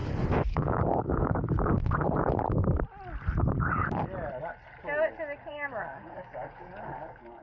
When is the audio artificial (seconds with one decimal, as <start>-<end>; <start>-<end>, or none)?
0.5-1.4; 5.5-7.4